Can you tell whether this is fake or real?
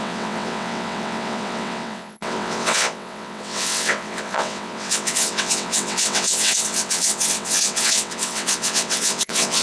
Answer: fake